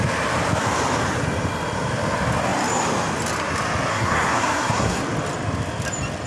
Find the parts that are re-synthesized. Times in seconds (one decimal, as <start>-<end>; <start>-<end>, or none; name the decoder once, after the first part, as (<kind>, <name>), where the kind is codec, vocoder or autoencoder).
3.9-5.0 (codec, SNAC)